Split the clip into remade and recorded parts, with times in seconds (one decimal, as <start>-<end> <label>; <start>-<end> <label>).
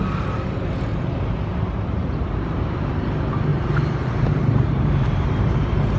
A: 0.0-0.9 recorded; 0.9-2.9 remade; 2.9-3.5 recorded; 3.5-6.0 remade